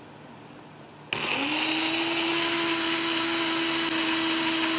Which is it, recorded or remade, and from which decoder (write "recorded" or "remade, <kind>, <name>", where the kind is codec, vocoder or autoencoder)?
recorded